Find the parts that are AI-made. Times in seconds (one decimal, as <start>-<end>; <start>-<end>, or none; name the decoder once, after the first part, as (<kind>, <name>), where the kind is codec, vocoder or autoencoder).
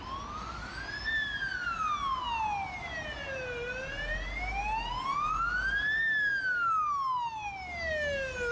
none